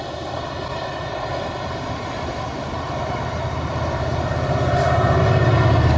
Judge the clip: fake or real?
real